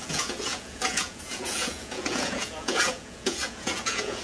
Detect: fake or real fake